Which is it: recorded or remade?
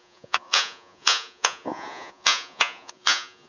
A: remade